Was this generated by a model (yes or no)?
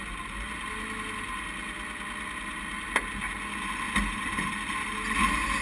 no